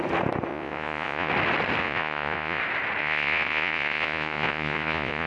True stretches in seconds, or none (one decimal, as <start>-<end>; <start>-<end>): 0.0-0.5; 1.3-1.8; 2.6-3.0